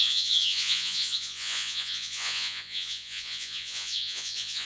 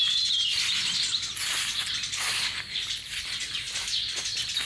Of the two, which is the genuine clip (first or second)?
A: second